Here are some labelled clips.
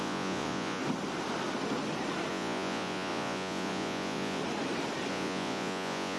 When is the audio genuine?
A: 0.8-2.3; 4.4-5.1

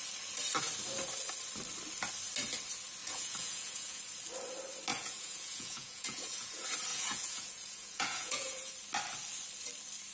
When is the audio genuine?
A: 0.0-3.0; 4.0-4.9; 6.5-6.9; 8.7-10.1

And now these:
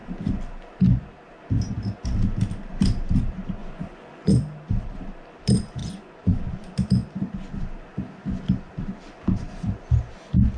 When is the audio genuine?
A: 0.0-3.6; 4.3-5.8; 6.4-10.6

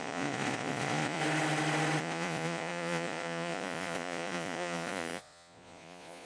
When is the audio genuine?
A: 1.2-2.0

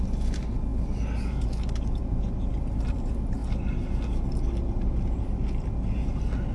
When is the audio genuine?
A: 0.0-6.5

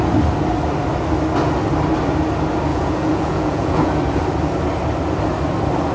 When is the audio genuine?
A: 0.0-2.7; 3.9-5.9

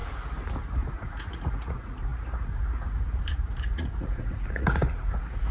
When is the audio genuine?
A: 0.0-0.9